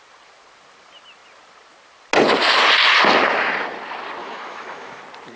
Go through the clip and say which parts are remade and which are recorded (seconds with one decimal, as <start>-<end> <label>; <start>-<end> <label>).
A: 0.0-4.2 recorded; 4.2-5.0 remade; 5.0-5.4 recorded